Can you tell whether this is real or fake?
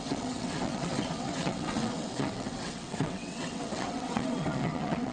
fake